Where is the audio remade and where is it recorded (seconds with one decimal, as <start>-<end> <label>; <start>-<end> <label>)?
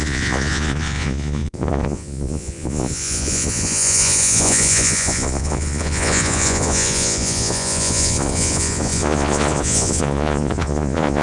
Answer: 0.0-11.2 remade